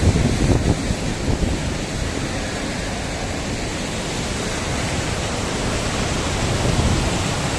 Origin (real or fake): real